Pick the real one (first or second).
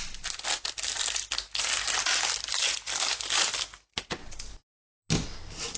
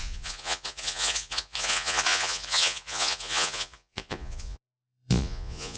first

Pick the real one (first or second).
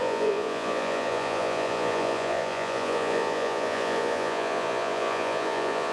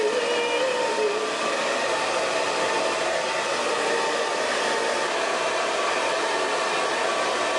second